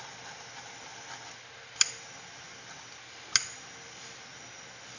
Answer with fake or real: real